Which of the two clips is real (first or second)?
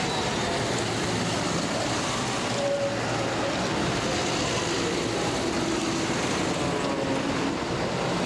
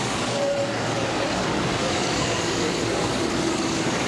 first